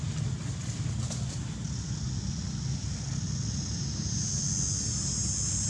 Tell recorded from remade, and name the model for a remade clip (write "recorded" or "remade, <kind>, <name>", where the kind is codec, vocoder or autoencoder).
recorded